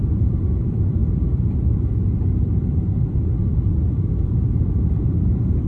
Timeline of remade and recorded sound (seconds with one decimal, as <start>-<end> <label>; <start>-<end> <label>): 0.0-5.7 remade